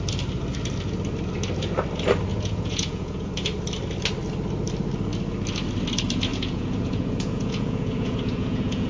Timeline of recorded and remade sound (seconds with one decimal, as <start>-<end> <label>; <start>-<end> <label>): 0.0-2.3 recorded; 2.3-3.3 remade; 3.3-6.3 recorded; 6.3-8.9 remade